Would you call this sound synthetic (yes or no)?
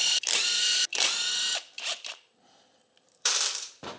yes